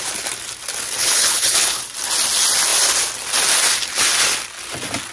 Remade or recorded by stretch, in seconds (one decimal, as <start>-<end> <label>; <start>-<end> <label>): 0.0-1.0 recorded; 1.0-1.8 remade; 1.8-5.1 recorded